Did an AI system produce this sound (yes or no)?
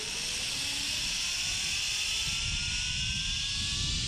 no